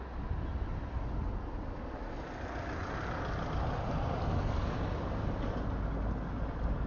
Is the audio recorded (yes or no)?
yes